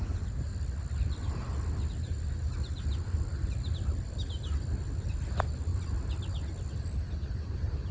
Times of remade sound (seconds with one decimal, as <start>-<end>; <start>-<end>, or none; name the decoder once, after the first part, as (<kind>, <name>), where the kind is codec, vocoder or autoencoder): none